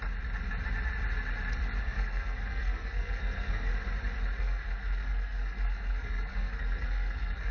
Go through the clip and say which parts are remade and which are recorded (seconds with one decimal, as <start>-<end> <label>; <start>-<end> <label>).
0.0-1.8 recorded; 1.8-3.7 remade; 3.7-4.4 recorded; 4.4-7.5 remade